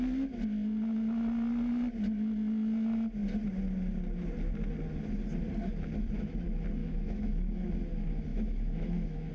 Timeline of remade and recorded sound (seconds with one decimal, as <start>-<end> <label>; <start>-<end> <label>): 0.0-6.8 recorded; 6.8-7.5 remade; 7.5-8.3 recorded; 8.3-9.3 remade